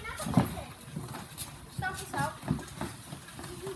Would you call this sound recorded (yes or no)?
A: yes